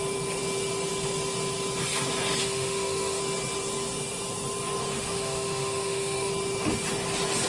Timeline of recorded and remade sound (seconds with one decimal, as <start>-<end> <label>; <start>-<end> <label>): 0.0-2.4 recorded; 2.4-3.2 remade; 3.2-4.8 recorded; 4.8-6.3 remade; 6.3-7.5 recorded